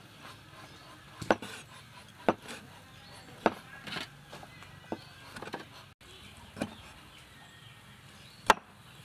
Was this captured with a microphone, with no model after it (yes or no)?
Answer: yes